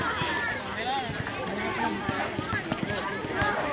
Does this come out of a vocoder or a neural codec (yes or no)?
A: no